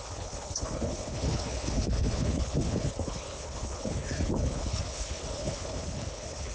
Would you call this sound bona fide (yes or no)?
no